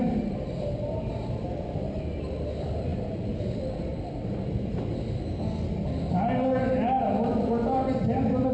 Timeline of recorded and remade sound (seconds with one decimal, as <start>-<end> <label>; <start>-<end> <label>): 0.0-2.9 recorded; 2.9-3.4 remade; 3.4-3.9 recorded; 3.9-4.9 remade; 4.9-8.5 recorded